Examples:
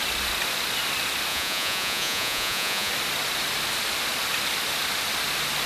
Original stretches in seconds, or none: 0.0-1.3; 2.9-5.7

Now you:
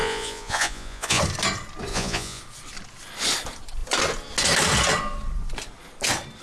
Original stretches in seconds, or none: 1.2-1.9; 2.4-6.4

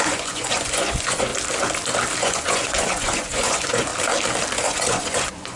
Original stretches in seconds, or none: 1.3-2.2; 3.9-4.6